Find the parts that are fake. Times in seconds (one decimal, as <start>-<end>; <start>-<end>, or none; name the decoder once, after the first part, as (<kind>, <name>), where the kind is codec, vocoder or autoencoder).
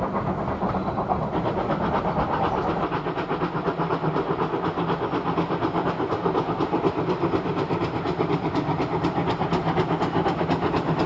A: none